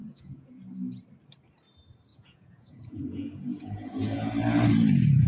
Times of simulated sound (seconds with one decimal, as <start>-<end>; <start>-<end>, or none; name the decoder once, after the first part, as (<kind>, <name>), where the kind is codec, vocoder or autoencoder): 0.0-1.0 (vocoder, Vocos); 2.1-4.3